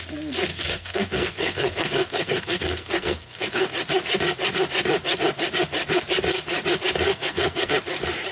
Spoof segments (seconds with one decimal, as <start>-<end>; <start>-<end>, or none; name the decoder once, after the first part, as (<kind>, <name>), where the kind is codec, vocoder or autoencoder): 0.5-3.7 (codec, SNAC); 7.1-7.7